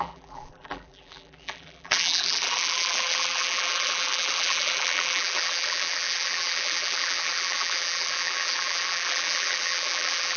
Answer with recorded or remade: remade